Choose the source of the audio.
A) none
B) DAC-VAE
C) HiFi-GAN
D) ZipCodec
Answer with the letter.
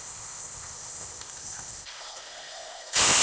D